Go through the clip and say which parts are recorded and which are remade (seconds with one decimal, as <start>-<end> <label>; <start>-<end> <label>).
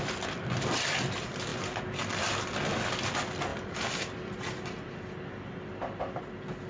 0.0-6.7 recorded